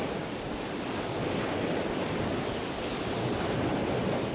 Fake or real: real